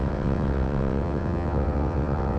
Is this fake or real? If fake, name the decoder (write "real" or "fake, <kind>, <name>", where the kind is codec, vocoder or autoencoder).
fake, vocoder, WaveNeXt